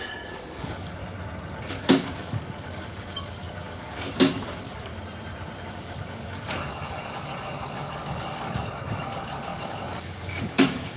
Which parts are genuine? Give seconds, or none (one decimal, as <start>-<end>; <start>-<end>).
1.0-1.7; 4.9-5.7